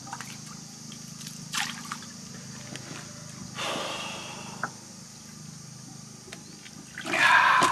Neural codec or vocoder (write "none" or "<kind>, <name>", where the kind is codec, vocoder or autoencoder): none